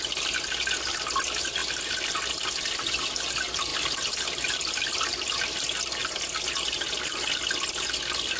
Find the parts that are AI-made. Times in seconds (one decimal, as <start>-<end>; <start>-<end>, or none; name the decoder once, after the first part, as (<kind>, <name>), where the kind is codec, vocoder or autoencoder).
1.6-3.0 (vocoder, BigVGAN v2)